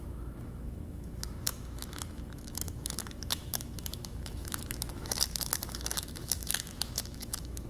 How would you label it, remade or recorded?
remade